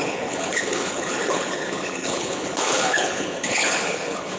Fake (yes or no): yes